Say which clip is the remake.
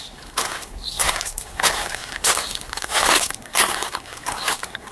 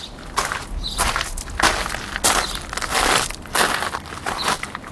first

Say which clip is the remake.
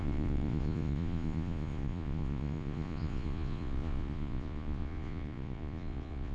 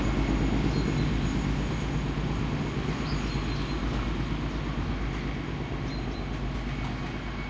first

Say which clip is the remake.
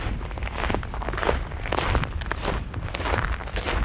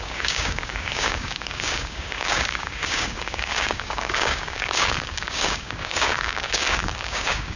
second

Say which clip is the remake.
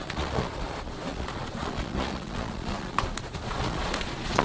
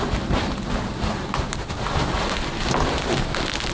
first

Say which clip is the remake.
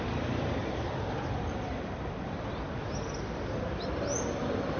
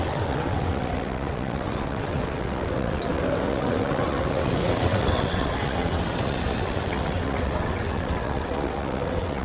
second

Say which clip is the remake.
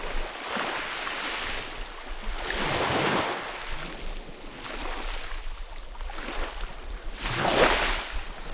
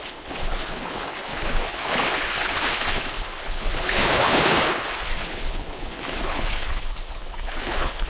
second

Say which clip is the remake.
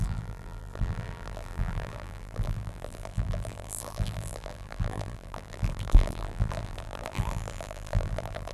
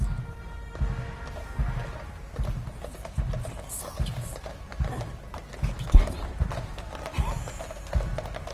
first